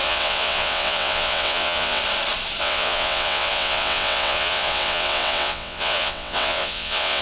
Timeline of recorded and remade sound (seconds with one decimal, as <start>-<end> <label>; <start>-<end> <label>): 0.0-2.0 remade; 2.0-2.6 recorded; 2.6-7.2 remade